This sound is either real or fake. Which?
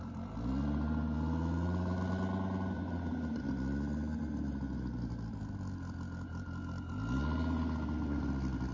real